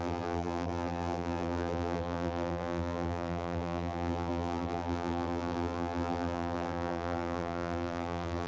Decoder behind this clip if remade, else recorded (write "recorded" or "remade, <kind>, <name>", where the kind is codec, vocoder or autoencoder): remade, vocoder, BigVGAN v2